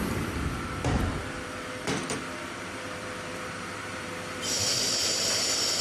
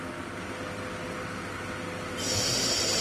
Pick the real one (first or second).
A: second